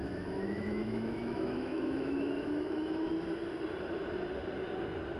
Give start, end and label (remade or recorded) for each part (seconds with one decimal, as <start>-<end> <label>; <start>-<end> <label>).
0.0-3.1 remade; 3.1-5.2 recorded